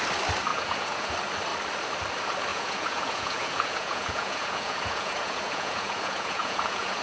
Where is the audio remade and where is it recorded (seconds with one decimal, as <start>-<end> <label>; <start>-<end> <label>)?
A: 0.0-0.5 recorded; 0.5-1.1 remade; 1.1-2.5 recorded; 2.5-7.0 remade